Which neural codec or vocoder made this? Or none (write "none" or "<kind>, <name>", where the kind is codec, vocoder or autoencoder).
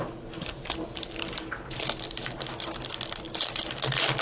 none